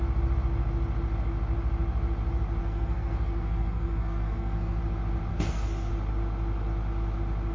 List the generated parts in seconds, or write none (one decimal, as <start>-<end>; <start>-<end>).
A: 2.6-4.8; 5.3-5.9